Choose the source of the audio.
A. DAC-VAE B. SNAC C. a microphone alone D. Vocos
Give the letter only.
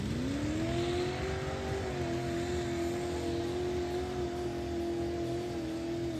C